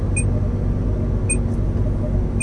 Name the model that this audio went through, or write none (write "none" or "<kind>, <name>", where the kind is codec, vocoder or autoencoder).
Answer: none